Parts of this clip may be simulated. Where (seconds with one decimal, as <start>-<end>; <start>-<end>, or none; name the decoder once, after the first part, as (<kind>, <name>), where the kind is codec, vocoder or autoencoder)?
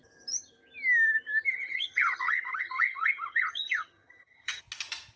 1.5-4.6 (vocoder, HiFi-GAN)